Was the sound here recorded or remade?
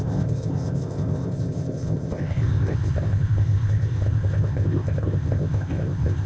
remade